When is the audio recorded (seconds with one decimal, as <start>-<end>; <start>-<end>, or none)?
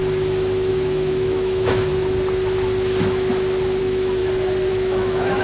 0.0-0.7; 1.9-3.8; 4.2-4.7